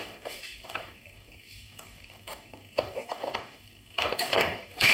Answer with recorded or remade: remade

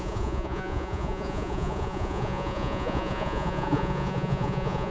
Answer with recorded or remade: remade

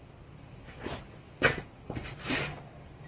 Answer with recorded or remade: recorded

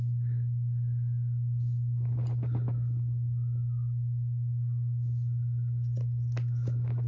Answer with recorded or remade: recorded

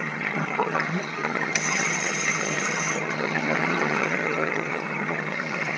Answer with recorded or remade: remade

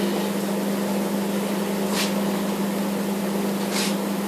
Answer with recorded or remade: recorded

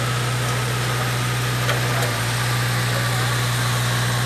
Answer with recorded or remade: recorded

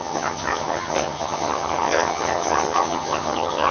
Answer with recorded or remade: remade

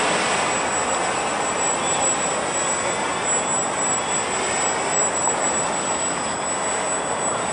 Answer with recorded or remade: recorded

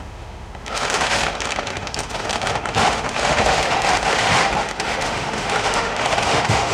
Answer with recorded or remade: remade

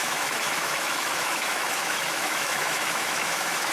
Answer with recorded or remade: remade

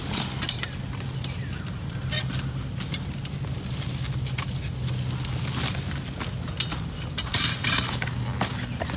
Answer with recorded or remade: recorded